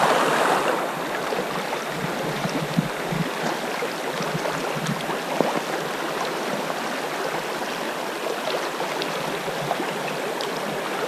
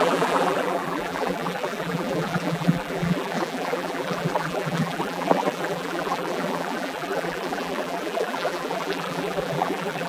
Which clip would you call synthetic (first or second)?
second